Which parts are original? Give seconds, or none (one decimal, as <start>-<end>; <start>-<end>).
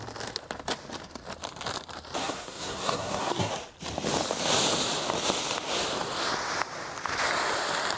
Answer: 0.0-2.2; 3.5-8.0